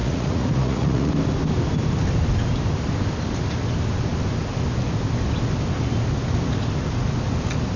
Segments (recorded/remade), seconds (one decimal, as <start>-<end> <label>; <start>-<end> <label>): 0.0-1.1 remade; 1.1-7.8 recorded